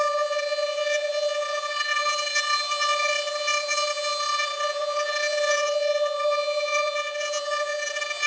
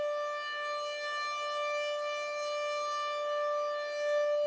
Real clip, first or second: second